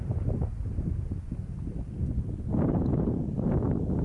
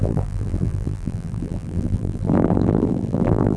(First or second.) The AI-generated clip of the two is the second